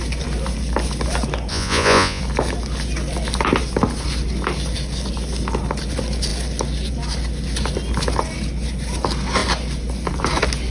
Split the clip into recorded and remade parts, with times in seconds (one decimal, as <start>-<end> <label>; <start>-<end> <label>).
0.0-1.5 recorded; 1.5-2.2 remade; 2.2-10.7 recorded